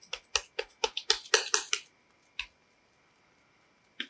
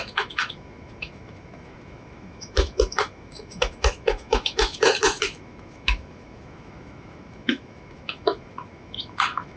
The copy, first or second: second